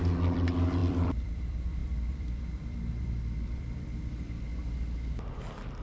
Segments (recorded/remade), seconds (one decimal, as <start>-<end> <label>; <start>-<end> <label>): 0.0-4.5 remade; 4.5-5.8 recorded